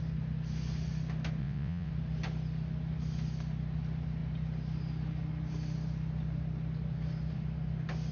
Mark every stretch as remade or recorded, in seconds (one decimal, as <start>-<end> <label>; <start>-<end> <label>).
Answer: 0.0-1.4 recorded; 1.4-1.9 remade; 1.9-8.1 recorded